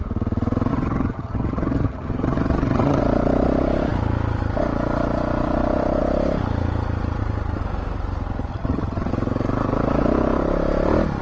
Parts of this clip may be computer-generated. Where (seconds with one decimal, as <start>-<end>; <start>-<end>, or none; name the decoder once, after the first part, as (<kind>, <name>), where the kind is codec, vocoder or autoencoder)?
0.7-3.0 (vocoder, HiFi-GAN); 8.5-9.1